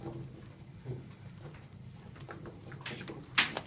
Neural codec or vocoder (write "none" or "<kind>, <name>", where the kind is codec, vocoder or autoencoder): none